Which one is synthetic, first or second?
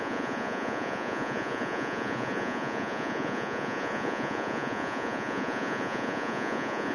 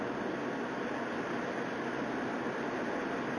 first